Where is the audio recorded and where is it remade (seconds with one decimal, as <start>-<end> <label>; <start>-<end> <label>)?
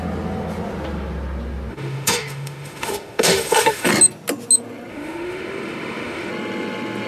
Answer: 0.0-1.7 recorded; 1.7-3.9 remade; 3.9-4.9 recorded; 4.9-6.3 remade; 6.3-7.1 recorded